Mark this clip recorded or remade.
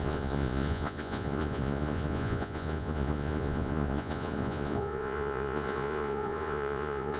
remade